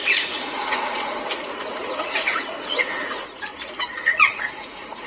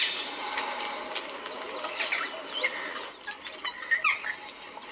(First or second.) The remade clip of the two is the first